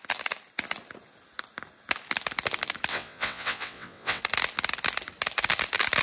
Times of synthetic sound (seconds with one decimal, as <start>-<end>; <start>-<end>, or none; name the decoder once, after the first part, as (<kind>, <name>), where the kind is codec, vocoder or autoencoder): 2.9-4.2 (vocoder, WaveNeXt)